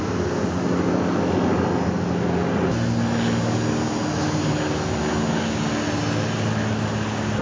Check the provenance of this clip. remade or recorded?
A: recorded